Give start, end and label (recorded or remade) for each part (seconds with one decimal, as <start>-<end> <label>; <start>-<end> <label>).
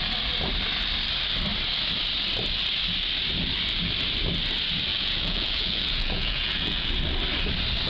0.0-4.9 recorded; 4.9-6.9 remade; 6.9-7.9 recorded